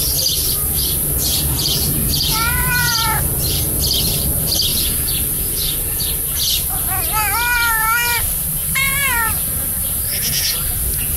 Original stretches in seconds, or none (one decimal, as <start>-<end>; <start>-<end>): 0.0-1.3; 3.8-4.7; 6.2-8.6; 9.4-10.1